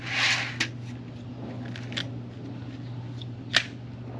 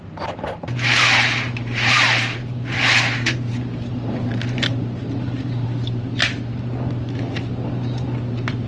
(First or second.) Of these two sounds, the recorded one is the first